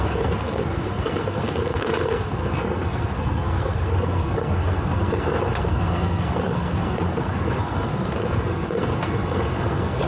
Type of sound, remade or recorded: remade